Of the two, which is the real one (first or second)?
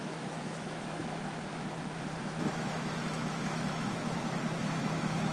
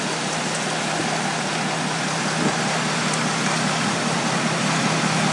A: second